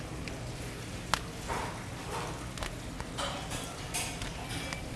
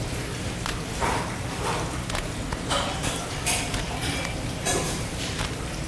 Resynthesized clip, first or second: second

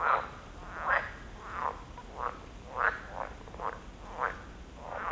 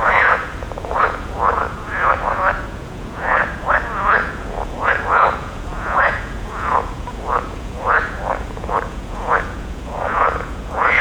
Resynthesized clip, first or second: second